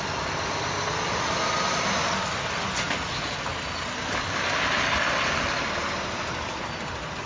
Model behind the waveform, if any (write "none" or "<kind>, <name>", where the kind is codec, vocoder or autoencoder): none